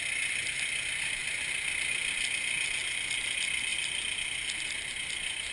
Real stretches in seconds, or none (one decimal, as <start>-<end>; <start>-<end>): 0.0-5.5